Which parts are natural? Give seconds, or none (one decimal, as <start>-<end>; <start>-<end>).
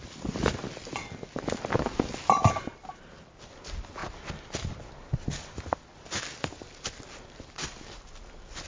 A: 0.0-8.7